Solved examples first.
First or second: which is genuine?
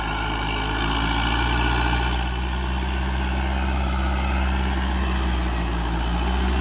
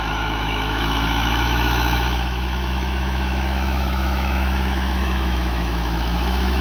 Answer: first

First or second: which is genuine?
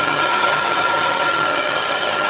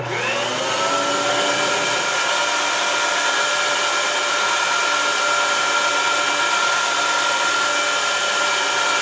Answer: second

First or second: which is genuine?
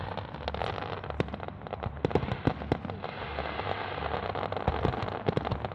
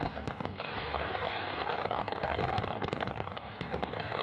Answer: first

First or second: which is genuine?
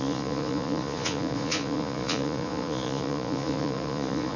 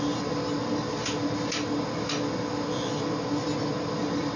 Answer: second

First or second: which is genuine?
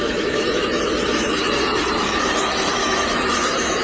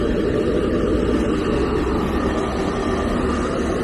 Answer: second